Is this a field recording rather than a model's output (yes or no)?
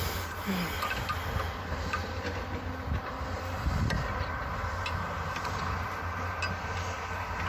yes